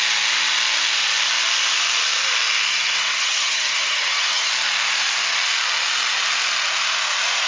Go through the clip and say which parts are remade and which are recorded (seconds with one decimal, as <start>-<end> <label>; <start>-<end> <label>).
0.0-2.7 recorded; 2.7-4.5 remade; 4.5-7.5 recorded